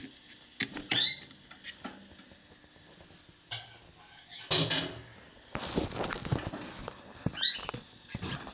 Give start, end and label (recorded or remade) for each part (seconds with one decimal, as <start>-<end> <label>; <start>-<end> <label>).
0.0-8.5 recorded